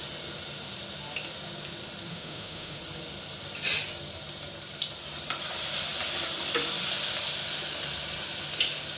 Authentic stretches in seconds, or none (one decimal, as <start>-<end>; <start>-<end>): 0.0-2.1; 2.8-9.0